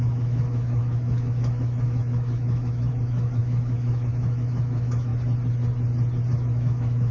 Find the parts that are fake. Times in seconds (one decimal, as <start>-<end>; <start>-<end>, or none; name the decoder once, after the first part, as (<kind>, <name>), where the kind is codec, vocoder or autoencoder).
0.0-5.1 (autoencoder, DAC-VAE); 6.3-7.1